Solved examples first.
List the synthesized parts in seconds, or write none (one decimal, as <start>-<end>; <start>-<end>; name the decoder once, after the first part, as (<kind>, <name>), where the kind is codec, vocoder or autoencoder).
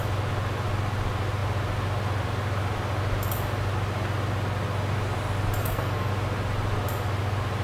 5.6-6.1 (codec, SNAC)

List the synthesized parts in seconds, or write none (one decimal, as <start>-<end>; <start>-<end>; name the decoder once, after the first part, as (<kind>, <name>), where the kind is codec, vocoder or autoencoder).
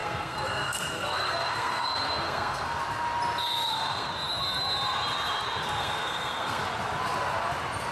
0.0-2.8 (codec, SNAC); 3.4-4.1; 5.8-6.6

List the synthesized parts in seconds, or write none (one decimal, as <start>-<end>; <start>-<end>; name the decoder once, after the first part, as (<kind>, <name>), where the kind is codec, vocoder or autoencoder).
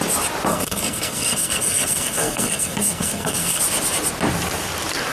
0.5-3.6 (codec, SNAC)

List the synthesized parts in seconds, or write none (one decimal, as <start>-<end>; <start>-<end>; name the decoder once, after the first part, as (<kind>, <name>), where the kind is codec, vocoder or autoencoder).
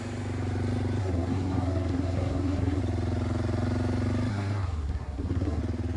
1.0-2.8 (codec, SNAC); 4.3-5.6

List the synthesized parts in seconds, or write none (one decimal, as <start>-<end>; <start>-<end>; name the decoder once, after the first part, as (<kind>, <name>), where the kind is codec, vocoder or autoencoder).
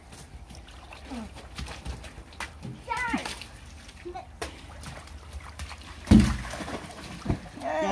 none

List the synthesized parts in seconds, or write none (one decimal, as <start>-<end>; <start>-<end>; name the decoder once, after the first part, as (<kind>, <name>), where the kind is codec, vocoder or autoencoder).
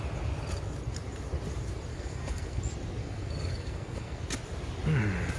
1.9-2.6 (codec, SNAC); 3.0-4.2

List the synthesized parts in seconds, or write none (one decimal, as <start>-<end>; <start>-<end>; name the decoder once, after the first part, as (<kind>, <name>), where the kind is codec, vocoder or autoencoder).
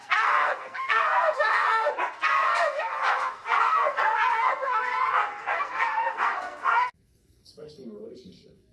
0.0-8.7 (codec, SNAC)